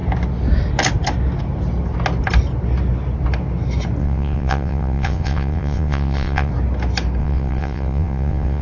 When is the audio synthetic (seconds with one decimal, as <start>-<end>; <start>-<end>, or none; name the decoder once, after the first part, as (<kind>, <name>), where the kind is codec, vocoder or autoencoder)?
4.0-6.5 (vocoder, WaveNeXt); 7.2-8.6